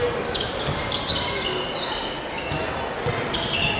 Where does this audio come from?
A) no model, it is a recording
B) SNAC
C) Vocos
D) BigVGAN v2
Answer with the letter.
A